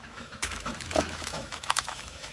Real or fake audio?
fake